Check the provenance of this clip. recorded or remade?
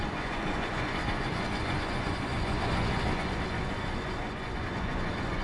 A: remade